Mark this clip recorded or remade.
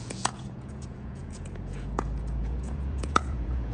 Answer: remade